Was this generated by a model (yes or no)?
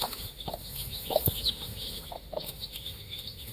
yes